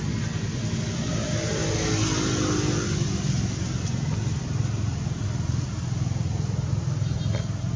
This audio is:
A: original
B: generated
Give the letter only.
A